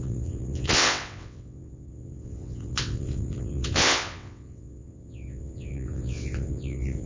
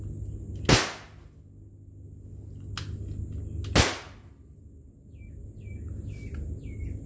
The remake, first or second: first